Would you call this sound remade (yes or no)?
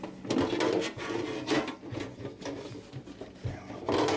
no